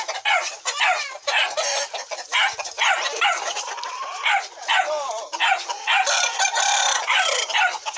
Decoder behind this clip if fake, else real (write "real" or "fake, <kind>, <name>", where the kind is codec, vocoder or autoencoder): fake, vocoder, BigVGAN v2